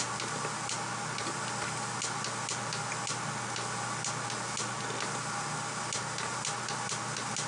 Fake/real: real